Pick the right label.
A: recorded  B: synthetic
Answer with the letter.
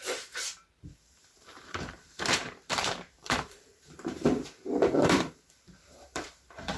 B